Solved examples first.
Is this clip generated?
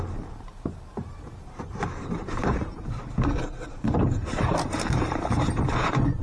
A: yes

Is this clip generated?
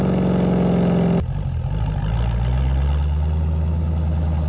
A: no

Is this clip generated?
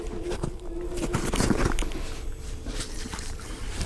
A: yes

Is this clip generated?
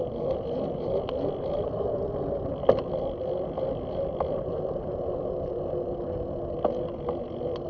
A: no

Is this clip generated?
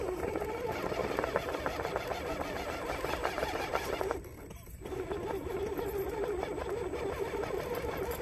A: no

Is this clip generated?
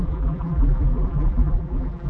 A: yes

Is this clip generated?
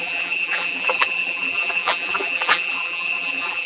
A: yes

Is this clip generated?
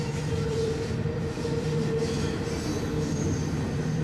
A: yes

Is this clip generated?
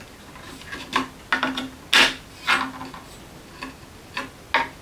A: no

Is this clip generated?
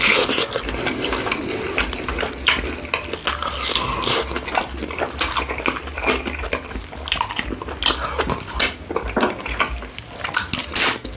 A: no